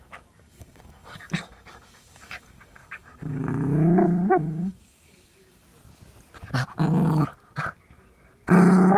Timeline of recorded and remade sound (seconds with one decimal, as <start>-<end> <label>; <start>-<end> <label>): 0.0-3.4 remade; 3.4-4.3 recorded; 4.3-5.7 remade; 5.7-9.0 recorded